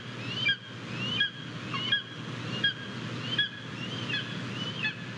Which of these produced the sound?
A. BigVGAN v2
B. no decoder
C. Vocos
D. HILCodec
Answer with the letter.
B